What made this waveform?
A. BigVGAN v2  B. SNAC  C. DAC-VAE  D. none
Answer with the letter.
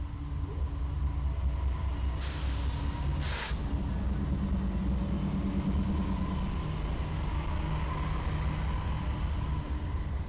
D